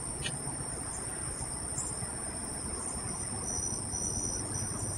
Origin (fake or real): real